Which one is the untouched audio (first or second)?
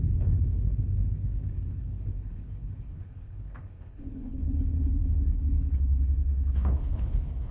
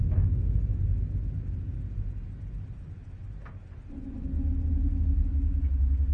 second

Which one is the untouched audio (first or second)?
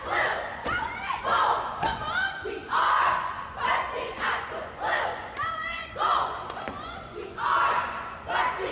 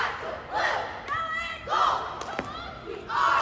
second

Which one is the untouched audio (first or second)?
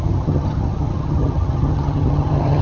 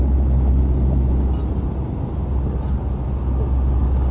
second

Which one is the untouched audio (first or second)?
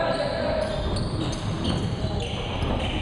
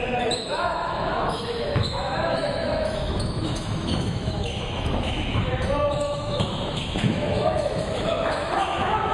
first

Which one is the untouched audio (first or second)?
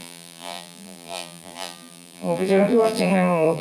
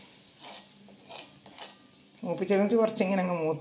second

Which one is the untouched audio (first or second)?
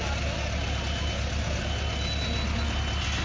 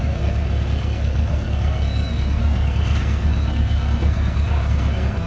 first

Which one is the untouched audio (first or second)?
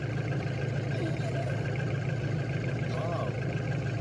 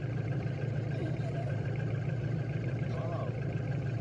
first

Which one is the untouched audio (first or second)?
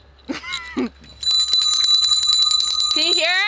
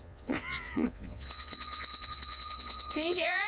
first